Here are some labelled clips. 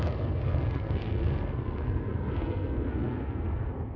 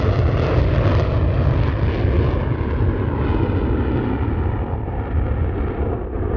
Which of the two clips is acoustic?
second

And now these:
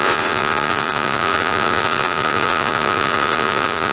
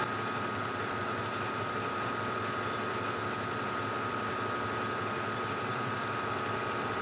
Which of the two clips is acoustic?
second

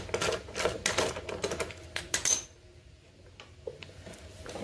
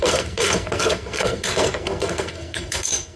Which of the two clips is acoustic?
first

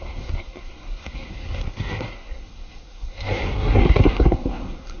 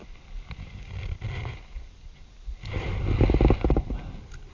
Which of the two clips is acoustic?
second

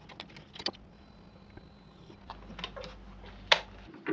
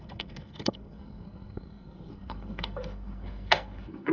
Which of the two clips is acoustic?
first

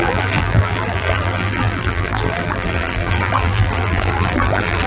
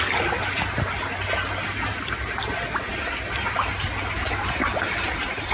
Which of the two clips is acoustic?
second